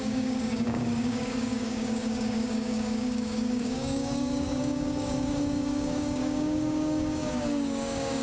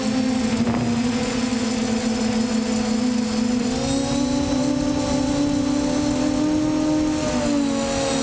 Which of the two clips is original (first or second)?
second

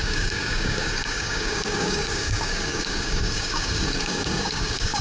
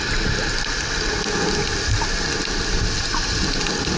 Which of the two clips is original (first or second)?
second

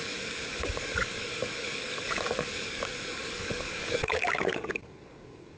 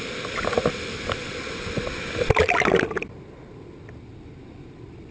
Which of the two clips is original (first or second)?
second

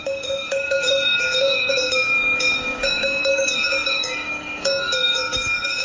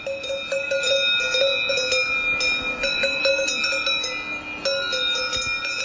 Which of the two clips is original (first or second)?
second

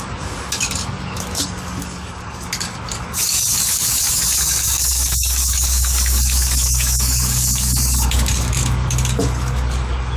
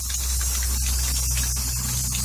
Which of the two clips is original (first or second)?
second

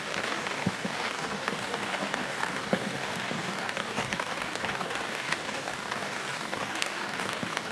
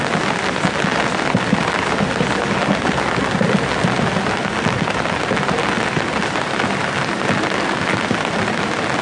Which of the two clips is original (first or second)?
second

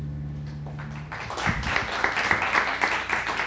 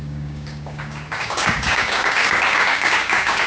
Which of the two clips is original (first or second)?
first